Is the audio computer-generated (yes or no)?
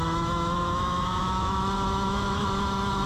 yes